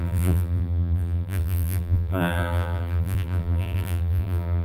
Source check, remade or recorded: remade